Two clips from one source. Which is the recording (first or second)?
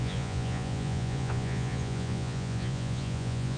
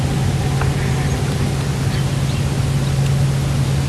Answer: second